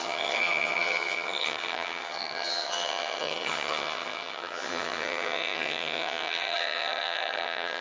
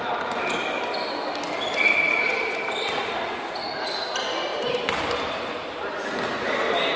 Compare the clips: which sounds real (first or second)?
second